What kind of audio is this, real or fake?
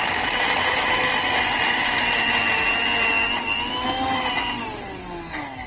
real